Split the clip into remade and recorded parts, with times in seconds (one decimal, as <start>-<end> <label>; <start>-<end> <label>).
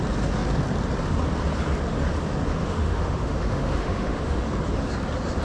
0.0-2.5 recorded; 2.5-4.4 remade; 4.4-5.4 recorded